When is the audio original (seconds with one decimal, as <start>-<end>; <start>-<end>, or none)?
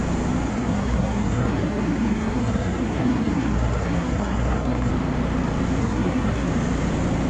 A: 0.0-0.5; 4.9-5.8; 6.5-7.3